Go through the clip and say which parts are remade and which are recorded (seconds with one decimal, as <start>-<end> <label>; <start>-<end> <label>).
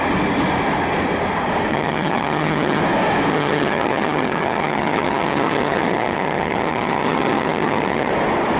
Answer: 0.0-1.7 recorded; 1.7-2.8 remade; 2.8-3.3 recorded; 3.3-8.1 remade; 8.1-8.6 recorded